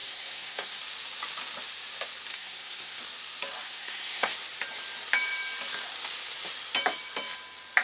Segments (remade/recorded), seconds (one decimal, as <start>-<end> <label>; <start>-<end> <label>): 0.0-0.8 remade; 0.8-2.3 recorded; 2.3-3.0 remade; 3.0-3.6 recorded; 3.6-4.3 remade; 4.3-7.8 recorded